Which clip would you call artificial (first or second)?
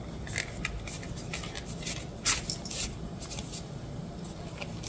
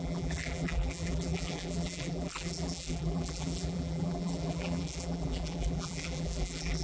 second